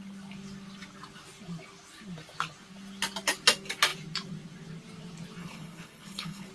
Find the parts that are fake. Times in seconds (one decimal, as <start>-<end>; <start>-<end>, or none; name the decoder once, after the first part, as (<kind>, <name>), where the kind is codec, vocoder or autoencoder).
5.4-6.5 (codec, HILCodec)